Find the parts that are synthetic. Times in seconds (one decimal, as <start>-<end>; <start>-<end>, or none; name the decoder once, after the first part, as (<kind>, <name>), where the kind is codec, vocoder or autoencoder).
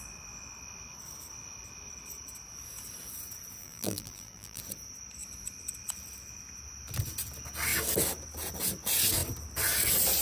3.6-4.6 (vocoder, BigVGAN v2)